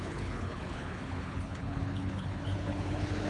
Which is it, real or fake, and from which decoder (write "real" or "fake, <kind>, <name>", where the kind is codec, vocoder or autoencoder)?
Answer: fake, codec, HILCodec